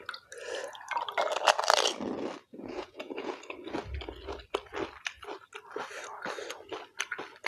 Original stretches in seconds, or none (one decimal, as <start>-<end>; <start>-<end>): 0.0-2.4; 3.4-7.5